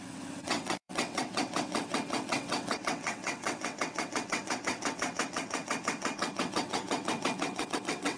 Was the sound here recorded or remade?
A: remade